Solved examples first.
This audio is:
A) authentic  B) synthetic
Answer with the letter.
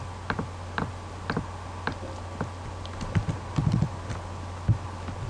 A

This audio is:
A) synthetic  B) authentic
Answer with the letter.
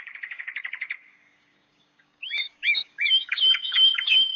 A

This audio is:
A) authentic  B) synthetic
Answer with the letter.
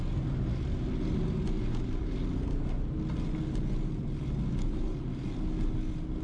A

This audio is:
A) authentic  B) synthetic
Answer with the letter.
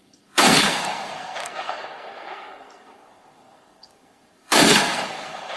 B